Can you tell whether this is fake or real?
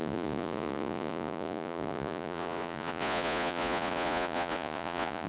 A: fake